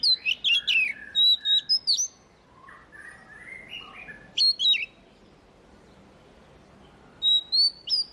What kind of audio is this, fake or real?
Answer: real